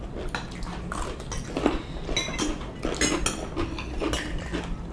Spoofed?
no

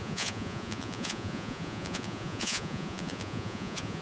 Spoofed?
yes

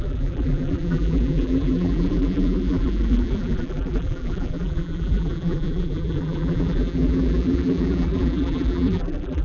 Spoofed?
yes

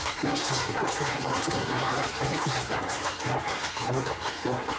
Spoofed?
yes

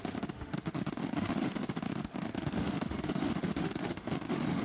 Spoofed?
yes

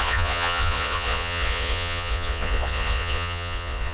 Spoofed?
yes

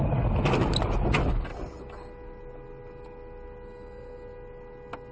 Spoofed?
no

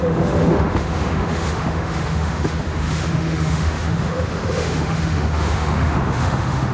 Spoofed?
yes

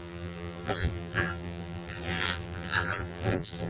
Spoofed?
yes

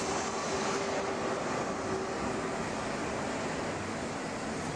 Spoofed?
no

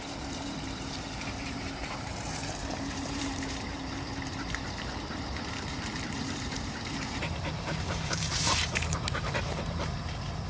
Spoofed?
yes